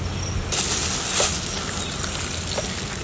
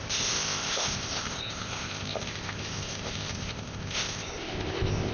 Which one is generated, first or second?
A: second